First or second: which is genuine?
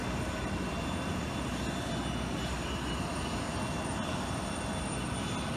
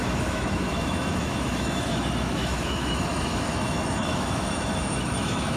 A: first